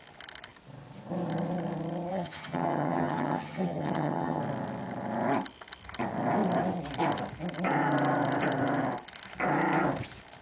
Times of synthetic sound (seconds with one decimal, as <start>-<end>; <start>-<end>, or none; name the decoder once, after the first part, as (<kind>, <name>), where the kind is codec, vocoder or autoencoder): 2.1-4.4 (vocoder, HiFi-GAN)